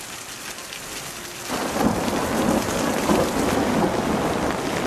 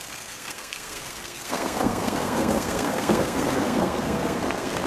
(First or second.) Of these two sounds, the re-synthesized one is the second